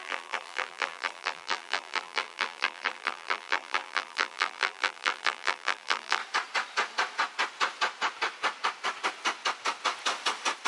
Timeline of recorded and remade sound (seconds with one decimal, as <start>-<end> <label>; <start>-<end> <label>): 0.0-6.2 remade; 6.2-10.7 recorded